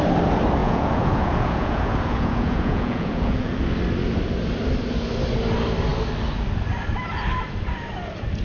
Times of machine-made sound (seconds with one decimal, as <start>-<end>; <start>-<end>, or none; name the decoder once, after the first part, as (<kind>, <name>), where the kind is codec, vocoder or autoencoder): 0.6-3.6 (vocoder, Vocos)